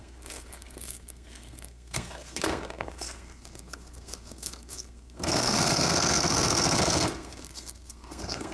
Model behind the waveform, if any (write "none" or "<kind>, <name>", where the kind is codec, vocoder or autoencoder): codec, SNAC